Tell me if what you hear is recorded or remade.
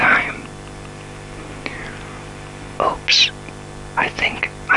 recorded